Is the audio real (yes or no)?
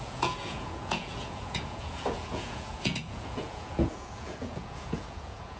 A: no